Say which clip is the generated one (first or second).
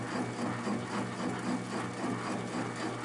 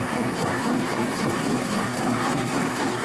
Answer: second